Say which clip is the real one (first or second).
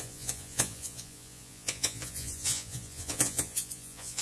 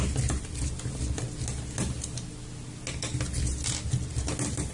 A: second